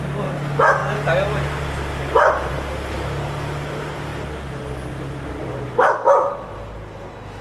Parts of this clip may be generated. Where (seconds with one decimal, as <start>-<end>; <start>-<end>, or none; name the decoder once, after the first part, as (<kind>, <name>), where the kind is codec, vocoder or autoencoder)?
none